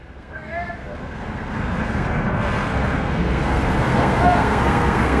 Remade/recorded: remade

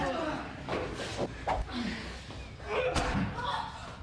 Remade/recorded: recorded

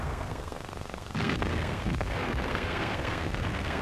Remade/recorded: remade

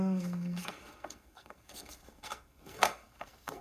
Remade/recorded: remade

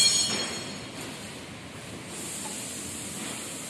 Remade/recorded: recorded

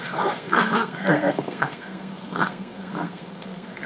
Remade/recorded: remade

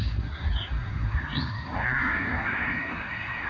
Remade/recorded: remade